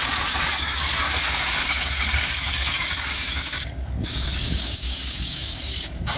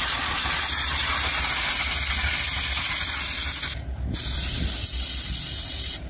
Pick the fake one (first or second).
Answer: first